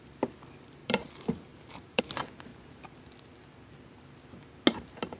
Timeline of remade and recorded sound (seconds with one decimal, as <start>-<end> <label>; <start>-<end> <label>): 0.0-0.8 recorded; 0.8-2.0 remade; 2.0-2.5 recorded; 2.5-3.0 remade; 3.0-5.2 recorded